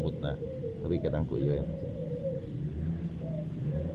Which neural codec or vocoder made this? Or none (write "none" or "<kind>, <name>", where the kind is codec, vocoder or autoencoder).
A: none